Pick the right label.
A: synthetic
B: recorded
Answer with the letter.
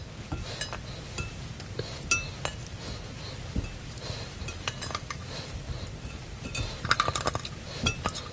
B